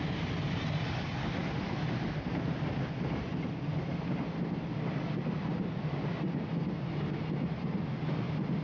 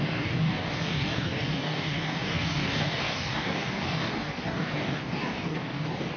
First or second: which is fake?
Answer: second